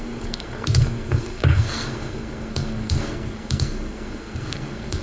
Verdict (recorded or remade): remade